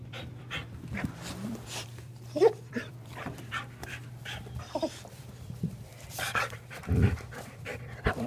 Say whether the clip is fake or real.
fake